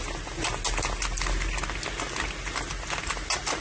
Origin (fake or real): real